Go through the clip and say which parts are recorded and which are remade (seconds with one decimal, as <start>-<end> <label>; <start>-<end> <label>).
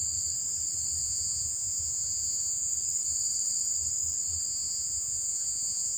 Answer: 0.0-1.0 recorded; 1.0-2.7 remade; 2.7-4.5 recorded; 4.5-6.0 remade